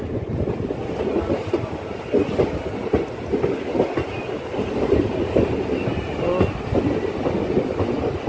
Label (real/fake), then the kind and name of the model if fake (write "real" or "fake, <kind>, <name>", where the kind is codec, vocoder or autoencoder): real